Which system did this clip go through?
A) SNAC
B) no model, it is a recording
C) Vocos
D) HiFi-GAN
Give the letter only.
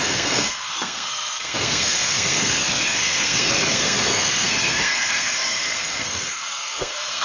A